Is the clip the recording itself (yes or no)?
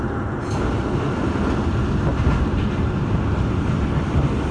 yes